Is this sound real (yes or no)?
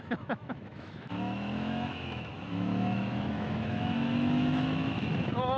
no